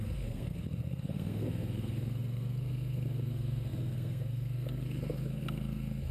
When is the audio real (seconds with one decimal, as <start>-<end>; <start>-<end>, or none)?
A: none